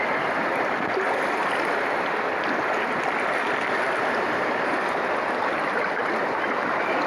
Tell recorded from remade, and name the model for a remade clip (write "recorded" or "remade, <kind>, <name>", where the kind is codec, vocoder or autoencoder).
recorded